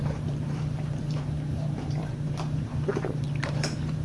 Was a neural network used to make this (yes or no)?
yes